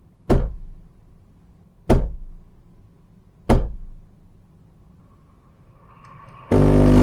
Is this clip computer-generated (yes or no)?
no